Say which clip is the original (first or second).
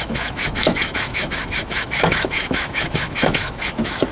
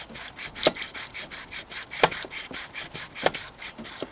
second